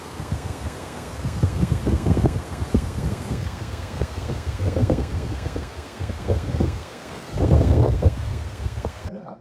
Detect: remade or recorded remade